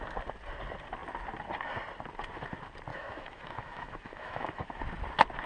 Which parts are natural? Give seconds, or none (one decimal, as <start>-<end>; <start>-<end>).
0.0-2.9; 4.8-5.5